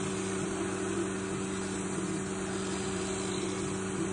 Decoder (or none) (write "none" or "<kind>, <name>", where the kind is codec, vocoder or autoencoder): none